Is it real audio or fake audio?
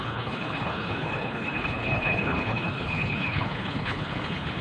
fake